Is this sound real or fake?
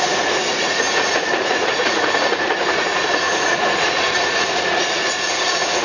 fake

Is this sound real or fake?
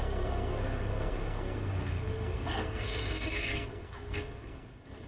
fake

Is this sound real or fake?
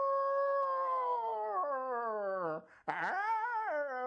real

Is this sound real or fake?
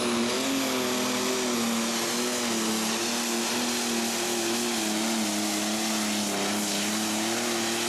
real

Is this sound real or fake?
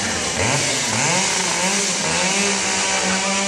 real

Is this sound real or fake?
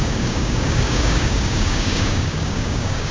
fake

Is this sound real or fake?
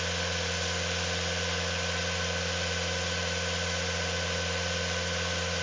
real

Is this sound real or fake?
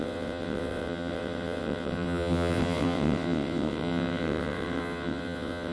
fake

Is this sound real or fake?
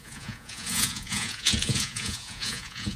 fake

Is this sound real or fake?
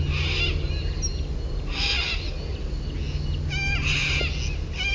real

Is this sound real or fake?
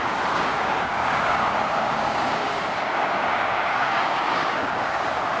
fake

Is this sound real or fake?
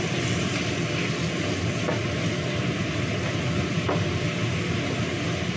real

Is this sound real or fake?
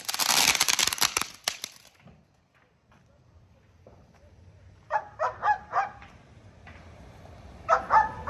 fake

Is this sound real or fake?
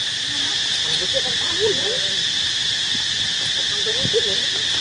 real